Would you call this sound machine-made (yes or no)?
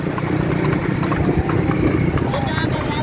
no